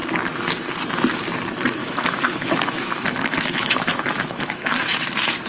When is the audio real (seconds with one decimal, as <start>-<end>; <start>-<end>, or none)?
0.0-1.8; 5.1-5.5